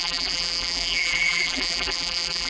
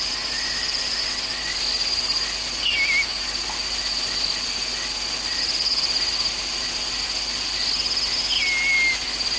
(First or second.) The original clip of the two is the second